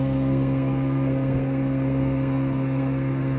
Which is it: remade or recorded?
remade